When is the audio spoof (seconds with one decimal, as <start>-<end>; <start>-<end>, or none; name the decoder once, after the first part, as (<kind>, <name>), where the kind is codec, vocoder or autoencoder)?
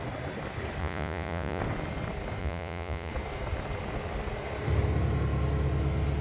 0.8-1.6 (vocoder, Vocos); 2.4-3.1